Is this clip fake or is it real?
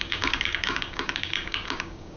fake